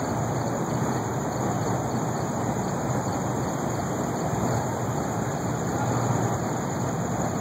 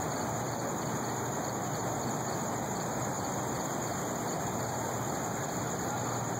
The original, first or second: second